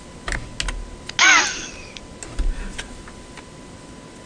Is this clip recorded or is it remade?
recorded